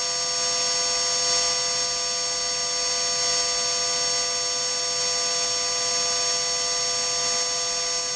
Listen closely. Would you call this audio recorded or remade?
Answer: recorded